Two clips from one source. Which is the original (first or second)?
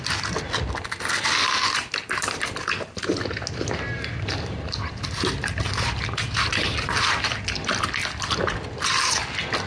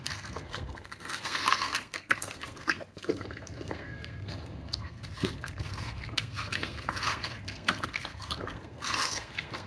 first